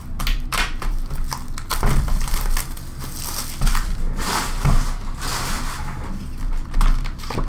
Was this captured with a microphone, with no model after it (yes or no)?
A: yes